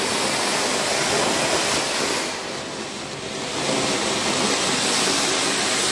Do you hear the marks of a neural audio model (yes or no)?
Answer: no